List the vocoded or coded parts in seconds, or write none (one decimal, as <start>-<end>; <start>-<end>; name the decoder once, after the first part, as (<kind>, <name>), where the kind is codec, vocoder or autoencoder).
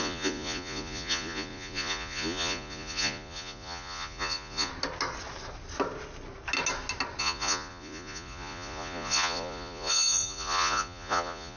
0.0-4.7 (vocoder, Vocos); 7.2-11.6